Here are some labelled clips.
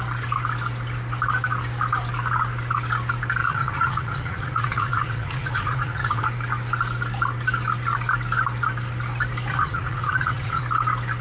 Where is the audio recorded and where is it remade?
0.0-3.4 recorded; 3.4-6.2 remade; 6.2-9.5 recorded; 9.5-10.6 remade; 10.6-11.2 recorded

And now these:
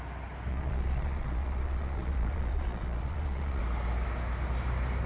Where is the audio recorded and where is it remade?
0.0-0.5 recorded; 0.5-3.6 remade; 3.6-5.1 recorded

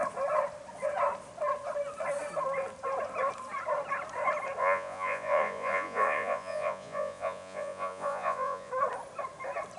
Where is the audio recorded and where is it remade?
0.0-4.6 recorded; 4.6-8.7 remade; 8.7-9.8 recorded